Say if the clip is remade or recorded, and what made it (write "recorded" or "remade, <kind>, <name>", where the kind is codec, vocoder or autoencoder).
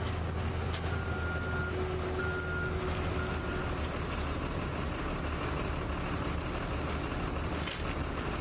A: recorded